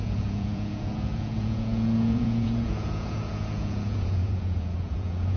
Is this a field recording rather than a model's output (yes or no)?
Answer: no